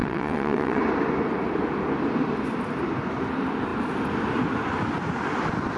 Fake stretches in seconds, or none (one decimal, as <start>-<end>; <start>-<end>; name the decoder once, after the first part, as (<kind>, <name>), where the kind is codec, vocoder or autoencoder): 0.0-0.8 (vocoder, WaveNeXt)